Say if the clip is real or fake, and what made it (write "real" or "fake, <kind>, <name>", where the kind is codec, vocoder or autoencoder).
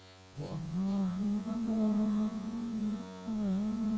fake, vocoder, Vocos